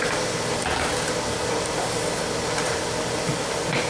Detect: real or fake real